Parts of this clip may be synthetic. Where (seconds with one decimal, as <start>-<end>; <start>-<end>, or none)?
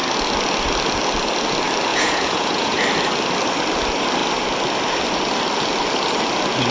1.9-2.8